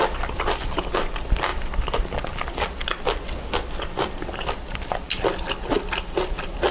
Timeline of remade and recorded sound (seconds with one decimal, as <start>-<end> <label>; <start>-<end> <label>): 0.0-6.7 recorded